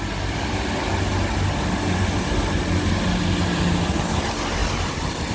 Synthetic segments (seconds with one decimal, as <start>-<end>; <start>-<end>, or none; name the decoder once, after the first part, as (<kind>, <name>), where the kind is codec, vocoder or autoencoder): none